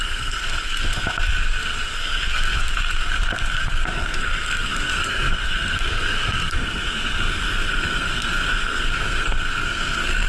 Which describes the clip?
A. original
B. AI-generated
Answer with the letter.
B